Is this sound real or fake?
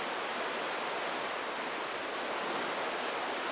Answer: real